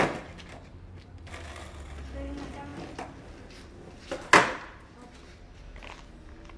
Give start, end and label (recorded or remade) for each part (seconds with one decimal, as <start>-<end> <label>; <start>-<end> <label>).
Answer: 0.0-4.4 recorded; 4.4-5.6 remade; 5.6-6.6 recorded